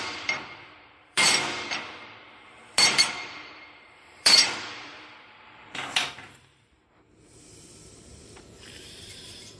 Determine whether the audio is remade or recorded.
remade